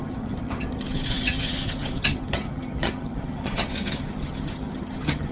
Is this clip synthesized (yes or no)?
yes